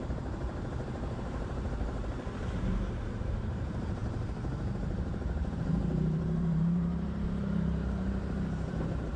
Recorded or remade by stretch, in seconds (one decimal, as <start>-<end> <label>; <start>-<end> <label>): 0.0-9.2 remade